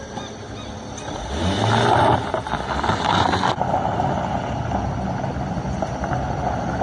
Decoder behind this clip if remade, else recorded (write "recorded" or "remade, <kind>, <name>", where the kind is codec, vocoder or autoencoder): recorded